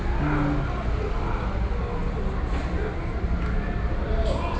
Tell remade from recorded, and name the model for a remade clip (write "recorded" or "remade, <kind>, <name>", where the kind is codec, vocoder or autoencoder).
recorded